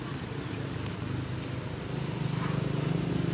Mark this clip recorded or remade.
recorded